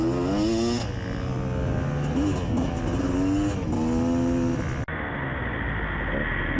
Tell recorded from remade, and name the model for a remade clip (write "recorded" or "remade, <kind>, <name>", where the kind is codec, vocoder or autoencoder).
recorded